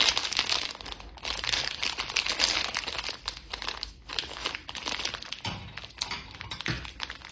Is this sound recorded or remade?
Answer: recorded